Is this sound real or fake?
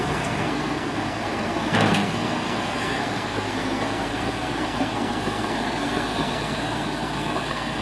fake